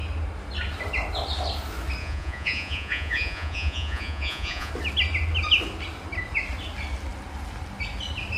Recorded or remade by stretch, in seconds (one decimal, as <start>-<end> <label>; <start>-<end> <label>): 0.0-2.0 recorded; 2.0-4.7 remade; 4.7-8.4 recorded